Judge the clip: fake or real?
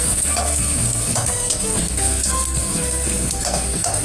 fake